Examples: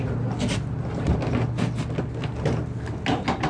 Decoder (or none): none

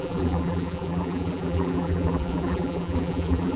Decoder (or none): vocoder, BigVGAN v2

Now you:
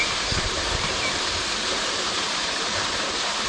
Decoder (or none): vocoder, BigVGAN v2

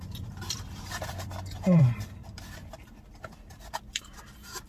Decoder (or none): vocoder, BigVGAN v2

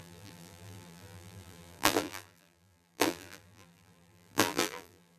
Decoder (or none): vocoder, BigVGAN v2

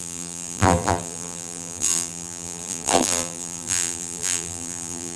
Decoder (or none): vocoder, BigVGAN v2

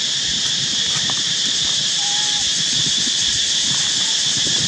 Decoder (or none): vocoder, BigVGAN v2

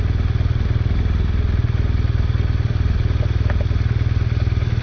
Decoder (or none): none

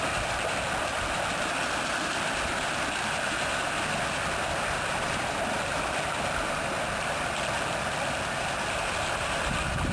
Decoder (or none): none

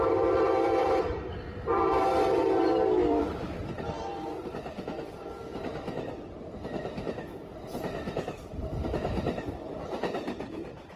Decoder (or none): vocoder, BigVGAN v2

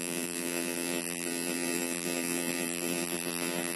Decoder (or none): vocoder, BigVGAN v2